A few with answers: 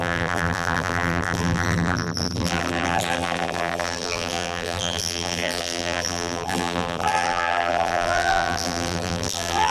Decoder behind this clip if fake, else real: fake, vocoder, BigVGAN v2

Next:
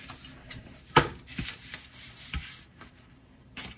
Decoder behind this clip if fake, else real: fake, vocoder, BigVGAN v2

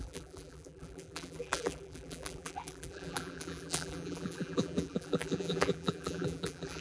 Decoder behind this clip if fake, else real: fake, vocoder, BigVGAN v2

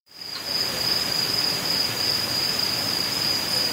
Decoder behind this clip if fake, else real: fake, vocoder, BigVGAN v2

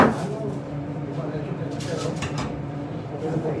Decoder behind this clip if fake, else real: fake, vocoder, BigVGAN v2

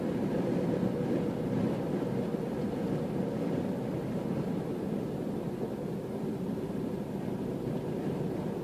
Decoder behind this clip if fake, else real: real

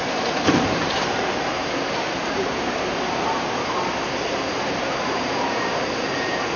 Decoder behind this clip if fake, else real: fake, vocoder, BigVGAN v2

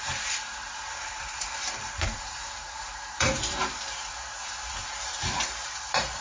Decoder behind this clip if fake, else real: fake, vocoder, BigVGAN v2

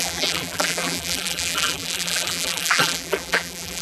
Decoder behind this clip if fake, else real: fake, vocoder, BigVGAN v2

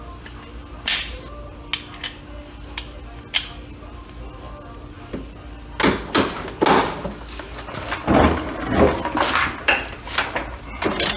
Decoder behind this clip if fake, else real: real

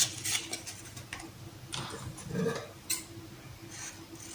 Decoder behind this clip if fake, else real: real